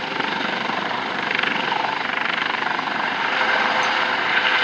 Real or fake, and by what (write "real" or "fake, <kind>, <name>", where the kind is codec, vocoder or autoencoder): fake, vocoder, BigVGAN v2